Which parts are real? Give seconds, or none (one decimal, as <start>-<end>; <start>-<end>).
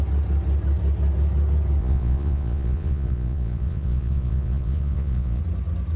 0.0-1.8; 5.4-6.0